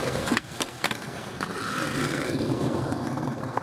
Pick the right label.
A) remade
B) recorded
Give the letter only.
A